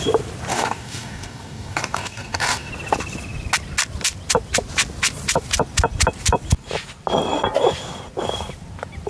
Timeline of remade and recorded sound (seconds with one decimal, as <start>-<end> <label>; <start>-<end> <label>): 0.0-0.5 recorded; 0.5-2.7 remade; 2.7-9.1 recorded